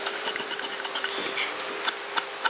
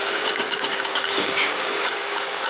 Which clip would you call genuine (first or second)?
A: first